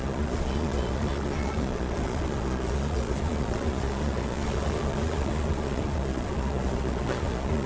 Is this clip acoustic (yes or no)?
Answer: no